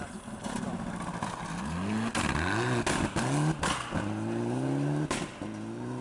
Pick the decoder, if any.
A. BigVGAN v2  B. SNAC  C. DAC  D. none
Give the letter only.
D